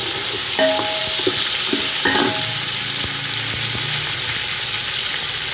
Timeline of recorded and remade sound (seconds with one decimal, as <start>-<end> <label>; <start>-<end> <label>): 0.0-5.5 recorded